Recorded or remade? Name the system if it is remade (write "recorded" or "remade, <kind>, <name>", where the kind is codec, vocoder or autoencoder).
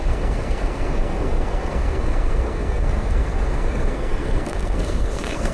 remade, codec, SNAC